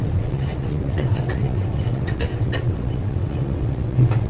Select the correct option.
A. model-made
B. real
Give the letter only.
A